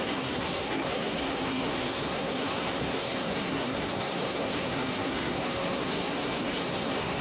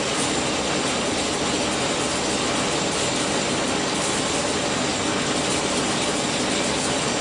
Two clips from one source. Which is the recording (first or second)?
second